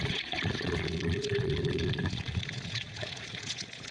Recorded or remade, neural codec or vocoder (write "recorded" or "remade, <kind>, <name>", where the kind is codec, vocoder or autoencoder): remade, vocoder, Vocos